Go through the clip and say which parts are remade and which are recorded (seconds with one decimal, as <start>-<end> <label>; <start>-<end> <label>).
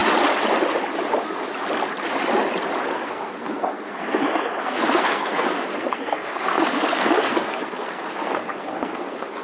0.0-2.9 recorded; 2.9-9.4 remade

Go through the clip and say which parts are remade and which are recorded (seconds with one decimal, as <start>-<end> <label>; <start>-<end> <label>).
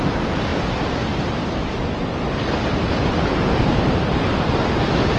0.0-5.2 recorded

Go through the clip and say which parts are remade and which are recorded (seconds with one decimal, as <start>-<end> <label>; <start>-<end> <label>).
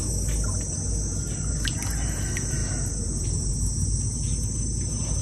0.0-5.2 recorded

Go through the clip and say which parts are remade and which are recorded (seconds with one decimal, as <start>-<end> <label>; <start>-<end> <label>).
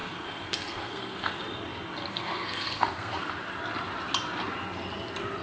0.0-1.4 remade; 1.4-2.1 recorded; 2.1-3.3 remade; 3.3-5.4 recorded